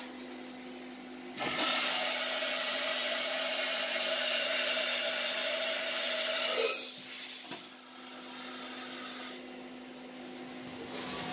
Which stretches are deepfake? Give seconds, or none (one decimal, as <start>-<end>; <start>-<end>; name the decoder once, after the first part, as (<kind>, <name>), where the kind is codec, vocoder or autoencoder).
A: 2.4-6.5 (vocoder, BigVGAN v2)